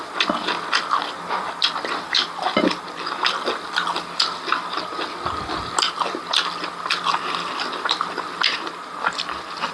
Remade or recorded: recorded